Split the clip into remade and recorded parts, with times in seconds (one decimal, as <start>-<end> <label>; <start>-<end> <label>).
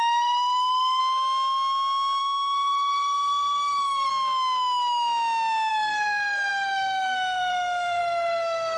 0.0-1.0 remade; 1.0-2.2 recorded; 2.2-4.1 remade; 4.1-5.7 recorded; 5.7-8.8 remade